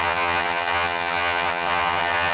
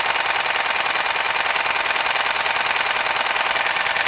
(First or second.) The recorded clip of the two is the second